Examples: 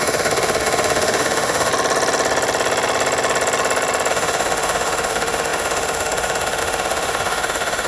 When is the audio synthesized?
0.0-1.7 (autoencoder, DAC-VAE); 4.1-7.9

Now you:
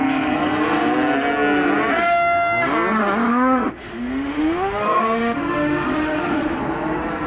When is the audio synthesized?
3.3-6.6 (autoencoder, DAC-VAE)

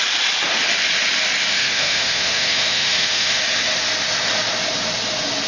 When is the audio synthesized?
1.5-3.4 (autoencoder, DAC-VAE)

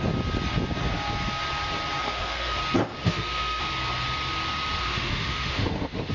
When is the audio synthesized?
2.0-2.6 (autoencoder, DAC-VAE); 3.0-3.6; 4.8-6.1